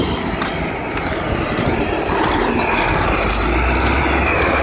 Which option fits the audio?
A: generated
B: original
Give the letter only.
B